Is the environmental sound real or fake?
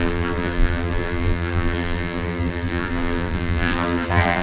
fake